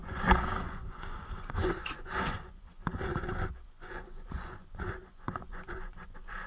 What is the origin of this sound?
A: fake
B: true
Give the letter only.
A